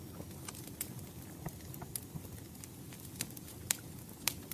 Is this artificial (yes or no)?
no